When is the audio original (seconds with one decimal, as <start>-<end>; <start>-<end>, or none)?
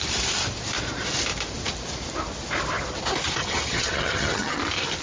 0.0-3.4; 4.6-5.0